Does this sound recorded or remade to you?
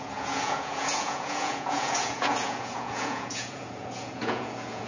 remade